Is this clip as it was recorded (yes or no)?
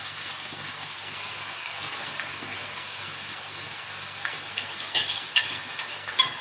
no